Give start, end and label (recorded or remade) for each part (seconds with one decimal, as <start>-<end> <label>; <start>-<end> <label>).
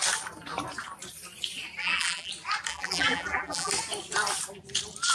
0.0-1.8 recorded; 1.8-2.3 remade; 2.3-2.7 recorded; 2.7-3.7 remade; 3.7-5.1 recorded